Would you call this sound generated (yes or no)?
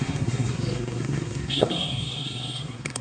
yes